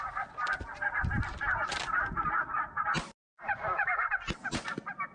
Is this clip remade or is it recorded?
recorded